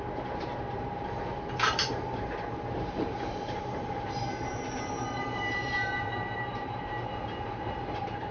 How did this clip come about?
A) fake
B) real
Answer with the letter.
A